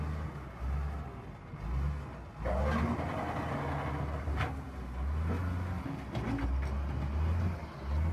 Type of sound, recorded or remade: recorded